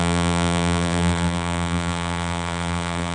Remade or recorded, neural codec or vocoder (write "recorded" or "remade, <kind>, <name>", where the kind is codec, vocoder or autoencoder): remade, vocoder, BigVGAN v2